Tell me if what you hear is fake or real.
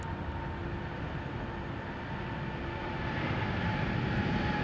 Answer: real